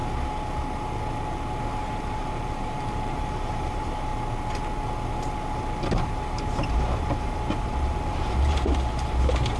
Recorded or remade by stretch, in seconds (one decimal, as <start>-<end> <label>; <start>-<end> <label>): 0.0-1.8 recorded; 1.8-4.1 remade; 4.1-5.6 recorded; 5.6-9.6 remade